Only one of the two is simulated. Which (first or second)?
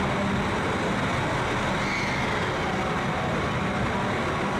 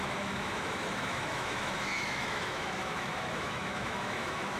second